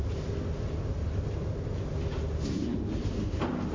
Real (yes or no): yes